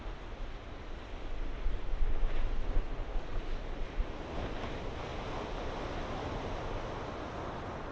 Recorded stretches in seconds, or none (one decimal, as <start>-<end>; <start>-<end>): 0.0-3.6; 4.3-5.1; 6.3-7.9